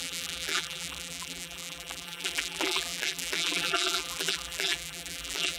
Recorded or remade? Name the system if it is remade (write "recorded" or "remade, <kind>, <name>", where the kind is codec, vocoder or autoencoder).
remade, vocoder, BigVGAN v2